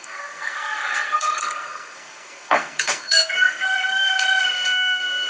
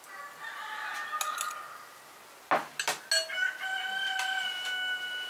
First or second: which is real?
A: second